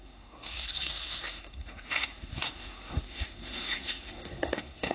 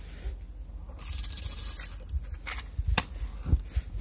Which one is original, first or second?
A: second